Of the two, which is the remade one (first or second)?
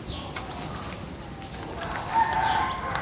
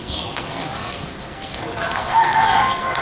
second